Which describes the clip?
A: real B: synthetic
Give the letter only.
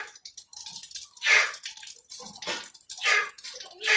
A